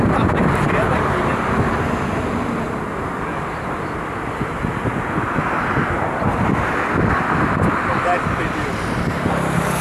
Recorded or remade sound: recorded